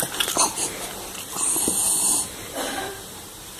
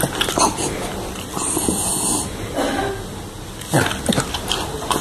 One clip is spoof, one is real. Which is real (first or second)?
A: second